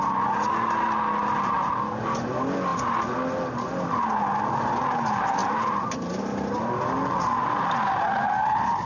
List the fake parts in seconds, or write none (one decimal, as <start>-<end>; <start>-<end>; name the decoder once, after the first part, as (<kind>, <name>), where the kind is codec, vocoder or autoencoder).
none